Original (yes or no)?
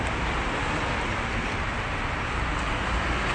yes